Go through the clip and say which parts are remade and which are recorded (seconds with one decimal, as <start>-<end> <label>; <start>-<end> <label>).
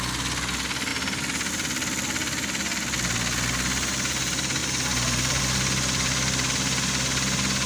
0.0-4.6 recorded; 4.6-5.4 remade; 5.4-7.7 recorded